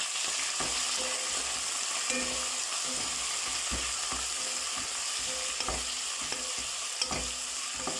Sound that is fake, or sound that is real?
real